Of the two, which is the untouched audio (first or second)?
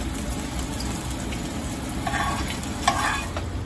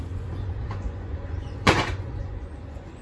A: first